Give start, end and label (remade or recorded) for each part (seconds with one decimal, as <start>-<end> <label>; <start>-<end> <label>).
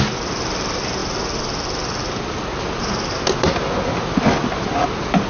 0.0-5.3 recorded